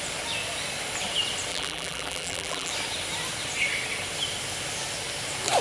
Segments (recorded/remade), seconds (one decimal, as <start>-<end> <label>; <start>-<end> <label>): 0.0-1.5 recorded; 1.5-2.7 remade; 2.7-5.6 recorded